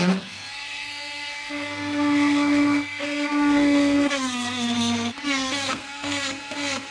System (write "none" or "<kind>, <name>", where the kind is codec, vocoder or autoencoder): codec, SNAC